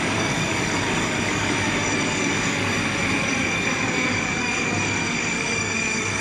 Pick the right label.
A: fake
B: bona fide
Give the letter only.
A